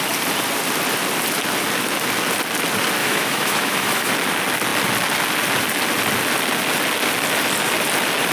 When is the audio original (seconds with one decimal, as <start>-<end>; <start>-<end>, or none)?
0.0-3.0; 4.1-8.3